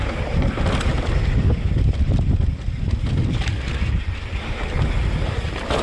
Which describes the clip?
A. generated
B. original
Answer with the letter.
B